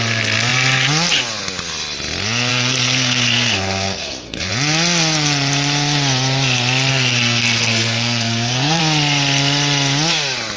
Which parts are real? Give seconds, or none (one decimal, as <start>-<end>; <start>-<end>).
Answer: 0.0-2.5; 4.5-6.9; 8.8-10.6